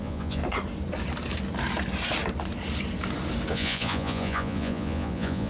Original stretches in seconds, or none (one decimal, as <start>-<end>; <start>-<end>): 0.4-3.5